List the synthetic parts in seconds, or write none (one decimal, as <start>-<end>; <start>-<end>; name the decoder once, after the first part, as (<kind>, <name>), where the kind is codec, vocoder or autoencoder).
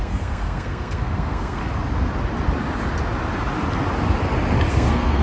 0.0-1.6 (codec, SNAC); 4.7-5.2